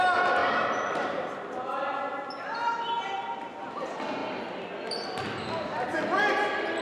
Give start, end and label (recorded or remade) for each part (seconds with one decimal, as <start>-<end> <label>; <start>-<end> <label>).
0.0-6.8 recorded